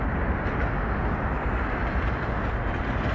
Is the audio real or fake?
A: real